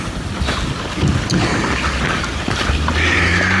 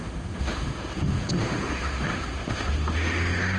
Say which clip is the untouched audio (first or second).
first